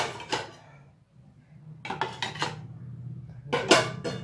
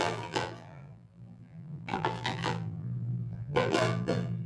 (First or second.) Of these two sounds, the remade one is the second